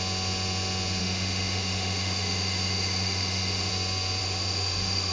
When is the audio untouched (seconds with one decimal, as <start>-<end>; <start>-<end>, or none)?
0.0-1.0; 3.7-4.2